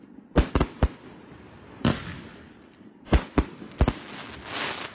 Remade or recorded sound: recorded